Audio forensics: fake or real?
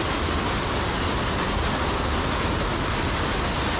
real